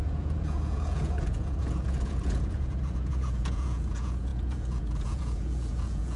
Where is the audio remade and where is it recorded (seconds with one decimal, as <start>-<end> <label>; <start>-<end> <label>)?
0.0-6.2 remade